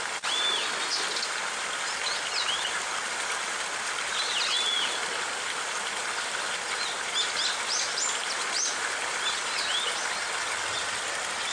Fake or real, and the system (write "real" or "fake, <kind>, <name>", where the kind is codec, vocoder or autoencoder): real